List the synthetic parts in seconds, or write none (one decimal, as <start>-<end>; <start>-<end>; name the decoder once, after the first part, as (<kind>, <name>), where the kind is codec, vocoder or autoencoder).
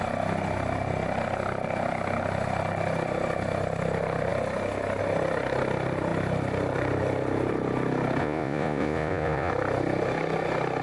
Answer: 8.2-9.5 (vocoder, Vocos)